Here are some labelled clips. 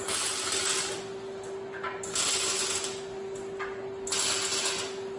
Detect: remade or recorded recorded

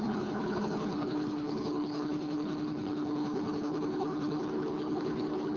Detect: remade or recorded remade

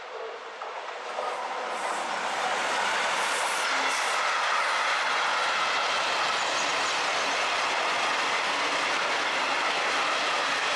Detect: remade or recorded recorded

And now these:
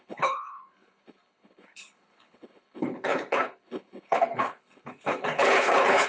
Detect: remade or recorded remade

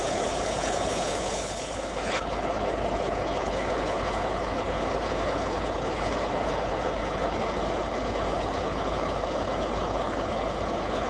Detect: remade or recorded remade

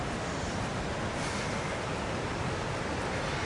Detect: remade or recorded recorded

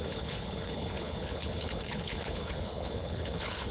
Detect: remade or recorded remade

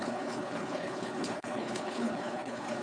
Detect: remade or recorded remade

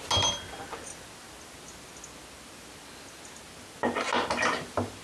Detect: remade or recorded recorded